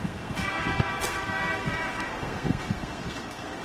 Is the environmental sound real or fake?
fake